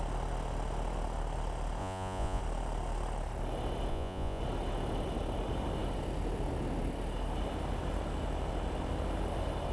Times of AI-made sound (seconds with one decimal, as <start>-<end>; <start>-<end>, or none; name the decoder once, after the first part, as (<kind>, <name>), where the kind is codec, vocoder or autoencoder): 1.8-2.4 (vocoder, Vocos); 3.9-4.4